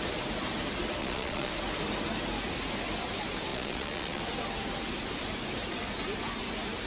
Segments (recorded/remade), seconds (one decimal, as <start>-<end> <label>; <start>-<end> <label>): 0.0-1.0 recorded; 1.0-1.5 remade; 1.5-3.5 recorded; 3.5-4.2 remade; 4.2-6.9 recorded